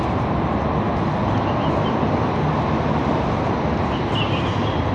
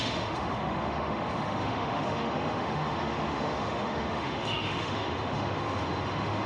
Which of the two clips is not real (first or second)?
second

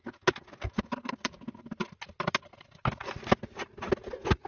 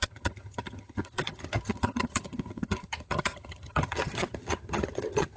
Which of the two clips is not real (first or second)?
second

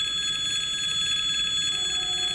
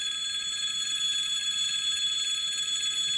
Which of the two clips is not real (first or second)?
second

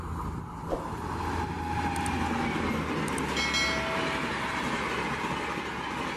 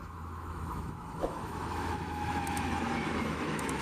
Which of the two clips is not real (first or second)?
second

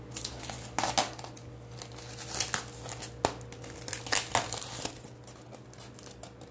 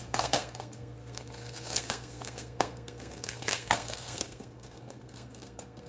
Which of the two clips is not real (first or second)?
second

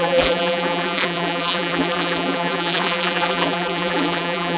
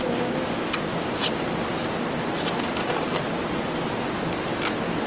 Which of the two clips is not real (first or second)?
first